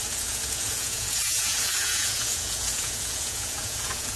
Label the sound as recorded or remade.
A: remade